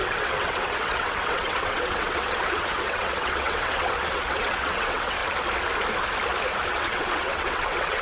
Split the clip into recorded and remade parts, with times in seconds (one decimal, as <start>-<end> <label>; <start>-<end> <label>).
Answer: 0.0-5.2 remade; 5.2-6.7 recorded; 6.7-8.0 remade